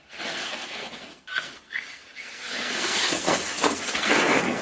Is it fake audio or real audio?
fake